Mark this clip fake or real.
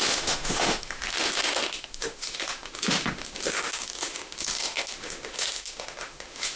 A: fake